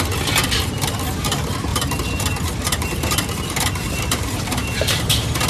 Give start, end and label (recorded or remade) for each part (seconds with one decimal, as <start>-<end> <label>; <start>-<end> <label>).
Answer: 0.0-1.7 recorded; 1.7-5.0 remade; 5.0-5.5 recorded